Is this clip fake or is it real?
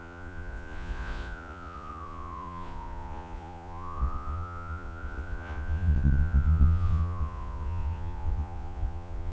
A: fake